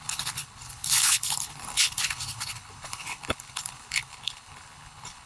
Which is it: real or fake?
fake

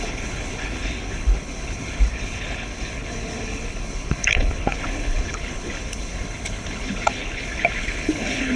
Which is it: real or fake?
fake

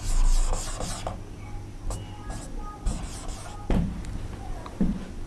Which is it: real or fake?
real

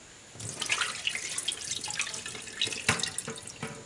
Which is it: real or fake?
real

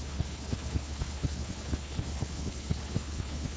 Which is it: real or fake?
fake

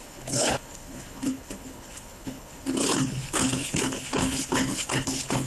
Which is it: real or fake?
fake